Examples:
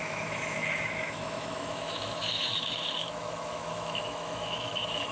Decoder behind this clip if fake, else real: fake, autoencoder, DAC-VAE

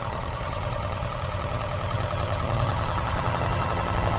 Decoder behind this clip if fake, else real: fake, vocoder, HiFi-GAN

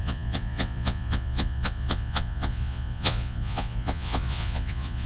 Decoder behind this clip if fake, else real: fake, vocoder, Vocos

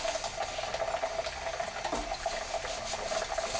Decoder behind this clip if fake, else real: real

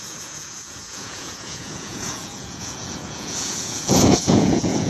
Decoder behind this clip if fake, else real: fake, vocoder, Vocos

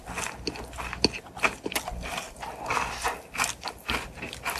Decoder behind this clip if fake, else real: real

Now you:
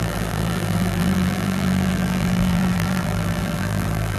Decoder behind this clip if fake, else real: fake, vocoder, BigVGAN v2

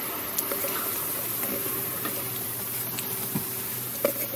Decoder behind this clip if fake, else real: real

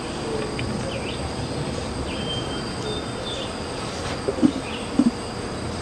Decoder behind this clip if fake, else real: real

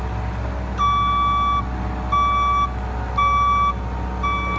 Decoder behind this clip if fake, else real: real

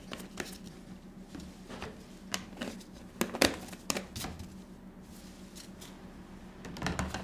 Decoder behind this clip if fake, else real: real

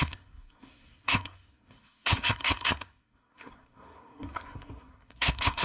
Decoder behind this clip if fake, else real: fake, codec, SNAC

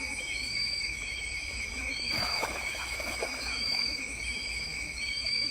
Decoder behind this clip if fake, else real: fake, autoencoder, DAC-VAE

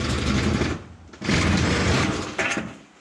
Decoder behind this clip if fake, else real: real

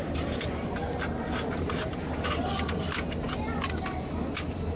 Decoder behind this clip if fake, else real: real